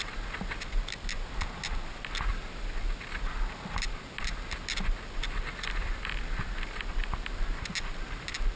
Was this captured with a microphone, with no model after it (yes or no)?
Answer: yes